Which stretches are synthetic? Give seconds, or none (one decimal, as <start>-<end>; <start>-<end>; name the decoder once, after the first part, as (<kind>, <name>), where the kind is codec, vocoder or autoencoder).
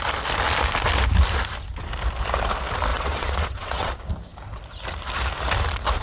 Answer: 2.9-3.9 (vocoder, WaveNeXt)